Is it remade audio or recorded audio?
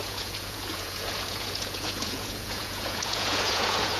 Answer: remade